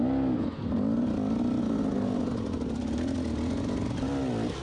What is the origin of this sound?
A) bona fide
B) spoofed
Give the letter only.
A